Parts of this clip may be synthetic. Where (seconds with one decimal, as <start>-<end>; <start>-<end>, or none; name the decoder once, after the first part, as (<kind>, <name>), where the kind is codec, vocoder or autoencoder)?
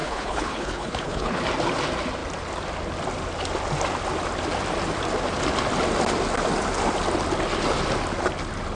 0.0-1.4 (codec, HILCodec)